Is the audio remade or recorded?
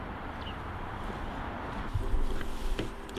remade